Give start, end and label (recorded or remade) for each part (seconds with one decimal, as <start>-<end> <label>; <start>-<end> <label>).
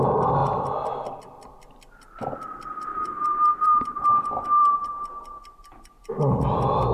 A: 0.0-2.9 recorded; 2.9-6.1 remade; 6.1-6.9 recorded